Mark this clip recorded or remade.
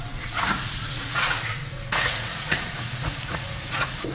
remade